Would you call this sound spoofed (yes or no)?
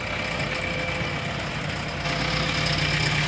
no